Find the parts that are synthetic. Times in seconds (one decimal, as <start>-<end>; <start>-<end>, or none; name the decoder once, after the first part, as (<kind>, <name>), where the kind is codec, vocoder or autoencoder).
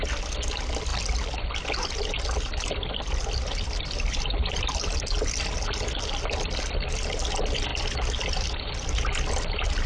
0.9-5.4 (vocoder, BigVGAN v2); 7.7-8.6